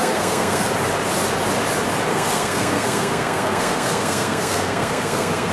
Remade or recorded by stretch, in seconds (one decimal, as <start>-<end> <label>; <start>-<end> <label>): 0.0-0.7 remade; 0.7-2.1 recorded; 2.1-5.5 remade